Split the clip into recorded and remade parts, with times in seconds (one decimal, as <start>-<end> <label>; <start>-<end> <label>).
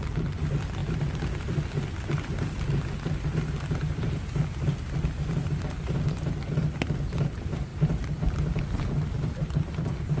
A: 0.0-10.2 recorded